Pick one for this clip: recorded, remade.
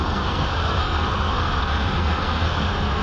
remade